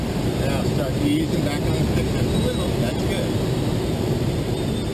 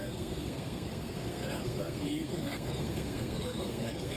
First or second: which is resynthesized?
second